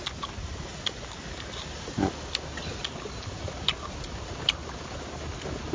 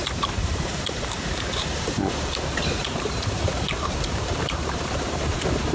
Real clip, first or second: first